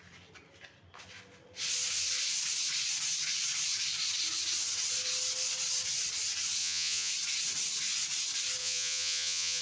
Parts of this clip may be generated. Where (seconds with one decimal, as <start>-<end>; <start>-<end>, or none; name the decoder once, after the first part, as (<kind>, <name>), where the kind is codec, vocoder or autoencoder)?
6.6-7.1 (vocoder, Vocos); 8.6-9.6